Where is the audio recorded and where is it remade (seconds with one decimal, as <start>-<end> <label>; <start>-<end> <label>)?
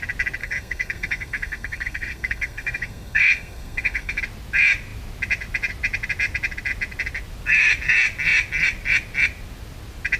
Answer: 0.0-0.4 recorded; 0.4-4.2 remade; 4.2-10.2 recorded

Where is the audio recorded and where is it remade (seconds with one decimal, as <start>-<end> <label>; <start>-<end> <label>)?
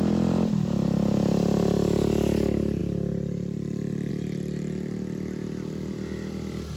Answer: 0.0-6.8 recorded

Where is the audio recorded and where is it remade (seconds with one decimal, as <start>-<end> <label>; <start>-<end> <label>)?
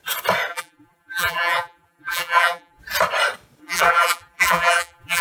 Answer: 0.0-0.5 recorded; 0.5-2.8 remade; 2.8-3.6 recorded; 3.6-5.2 remade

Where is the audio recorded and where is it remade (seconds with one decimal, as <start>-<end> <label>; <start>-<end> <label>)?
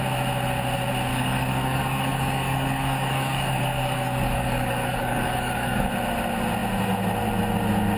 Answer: 0.0-1.1 recorded; 1.1-5.9 remade; 5.9-8.0 recorded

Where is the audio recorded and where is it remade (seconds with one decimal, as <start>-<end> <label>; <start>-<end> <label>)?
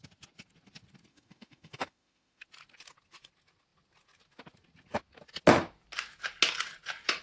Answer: 0.0-1.1 recorded; 1.1-2.4 remade; 2.4-7.2 recorded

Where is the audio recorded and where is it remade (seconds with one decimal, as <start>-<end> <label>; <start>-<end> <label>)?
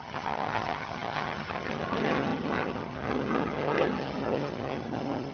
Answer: 0.0-5.3 remade